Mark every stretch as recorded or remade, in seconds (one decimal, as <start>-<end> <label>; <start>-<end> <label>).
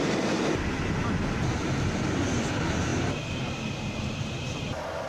0.0-5.1 recorded